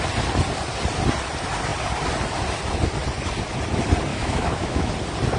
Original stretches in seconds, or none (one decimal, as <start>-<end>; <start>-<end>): 0.0-4.1; 4.9-5.4